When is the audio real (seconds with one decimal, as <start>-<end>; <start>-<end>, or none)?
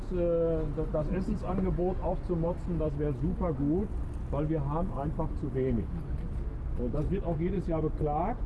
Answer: 0.0-8.5